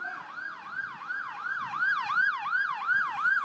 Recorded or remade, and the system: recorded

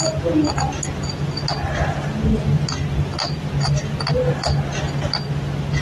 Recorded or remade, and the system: recorded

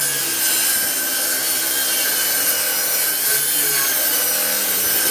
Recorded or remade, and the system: recorded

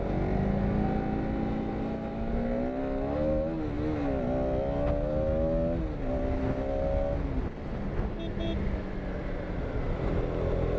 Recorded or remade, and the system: recorded